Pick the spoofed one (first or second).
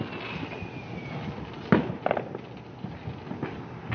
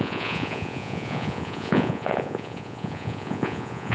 second